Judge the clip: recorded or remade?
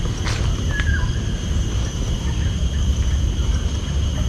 recorded